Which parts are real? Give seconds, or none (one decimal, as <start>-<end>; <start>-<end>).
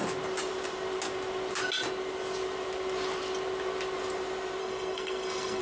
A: 0.0-4.6